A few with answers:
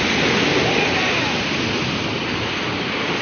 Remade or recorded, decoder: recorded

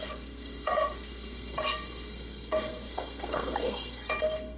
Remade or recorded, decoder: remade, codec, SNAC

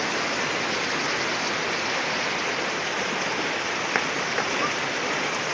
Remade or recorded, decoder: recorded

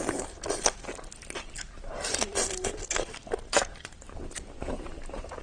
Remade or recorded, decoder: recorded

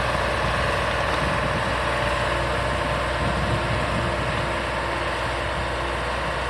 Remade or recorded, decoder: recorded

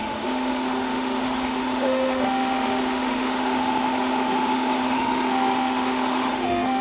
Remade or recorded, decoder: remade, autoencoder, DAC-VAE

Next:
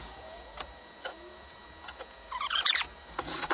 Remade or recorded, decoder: remade, vocoder, Vocos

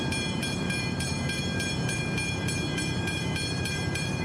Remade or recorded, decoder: remade, vocoder, BigVGAN v2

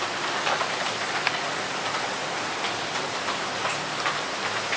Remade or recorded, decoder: recorded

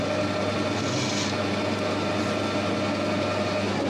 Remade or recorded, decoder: recorded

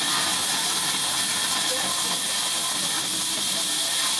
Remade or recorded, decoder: recorded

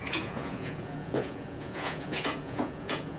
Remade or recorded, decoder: remade, vocoder, Vocos